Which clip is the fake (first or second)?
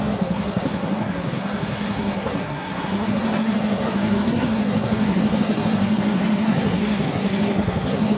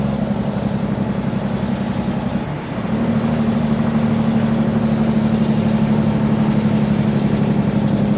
first